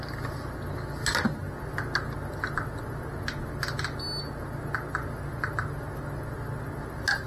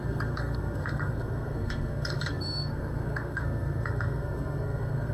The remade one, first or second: second